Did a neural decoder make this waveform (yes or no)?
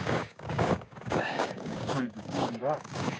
yes